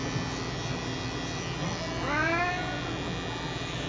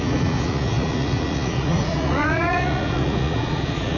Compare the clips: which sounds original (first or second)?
first